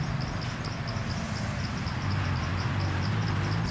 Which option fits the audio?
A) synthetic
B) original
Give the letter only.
B